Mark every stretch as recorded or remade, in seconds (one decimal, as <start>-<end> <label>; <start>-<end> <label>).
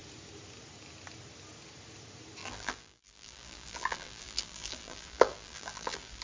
0.0-2.4 recorded; 2.4-6.2 remade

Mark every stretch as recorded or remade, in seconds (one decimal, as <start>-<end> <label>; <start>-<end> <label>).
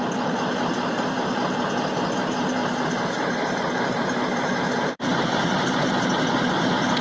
0.0-2.6 recorded; 2.6-5.9 remade; 5.9-7.0 recorded